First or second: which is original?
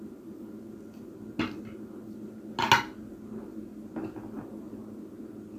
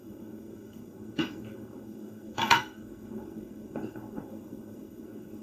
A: first